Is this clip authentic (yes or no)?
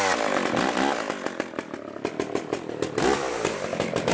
yes